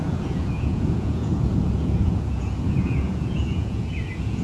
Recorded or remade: remade